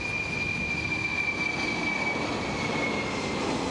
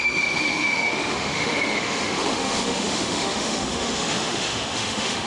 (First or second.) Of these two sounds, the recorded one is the first